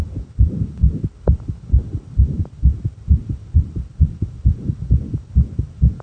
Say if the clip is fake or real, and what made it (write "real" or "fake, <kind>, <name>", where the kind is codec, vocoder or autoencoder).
real